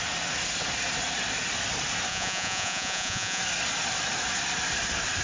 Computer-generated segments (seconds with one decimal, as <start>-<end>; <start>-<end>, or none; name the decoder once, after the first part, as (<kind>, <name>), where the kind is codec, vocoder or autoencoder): 2.1-3.4 (vocoder, Vocos)